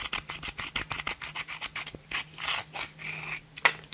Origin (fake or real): real